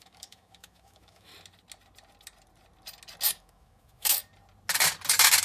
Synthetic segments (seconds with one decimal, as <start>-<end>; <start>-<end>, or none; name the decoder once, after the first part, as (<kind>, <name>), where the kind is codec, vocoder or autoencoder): 0.0-1.3 (autoencoder, DAC-VAE); 3.4-4.2

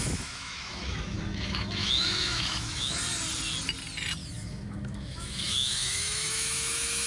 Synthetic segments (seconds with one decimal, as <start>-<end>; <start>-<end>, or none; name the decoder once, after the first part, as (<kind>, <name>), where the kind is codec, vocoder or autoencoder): 0.0-3.0 (autoencoder, DAC-VAE); 4.2-7.1

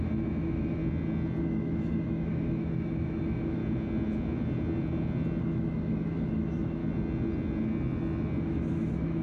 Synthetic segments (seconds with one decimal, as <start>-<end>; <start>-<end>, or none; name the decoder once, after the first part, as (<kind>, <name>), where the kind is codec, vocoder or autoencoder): 0.0-0.8 (autoencoder, DAC-VAE); 1.4-3.6; 5.4-6.8; 8.4-9.2

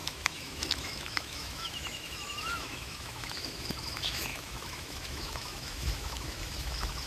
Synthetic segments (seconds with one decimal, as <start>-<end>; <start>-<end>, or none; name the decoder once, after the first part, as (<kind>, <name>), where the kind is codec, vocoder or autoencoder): 0.0-7.1 (autoencoder, DAC-VAE)